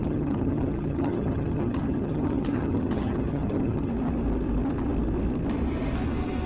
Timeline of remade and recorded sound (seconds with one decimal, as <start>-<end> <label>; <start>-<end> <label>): 0.0-3.9 remade; 3.9-6.5 recorded